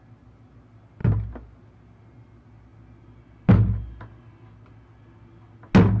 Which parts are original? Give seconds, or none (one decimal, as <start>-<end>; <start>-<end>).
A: 0.0-6.0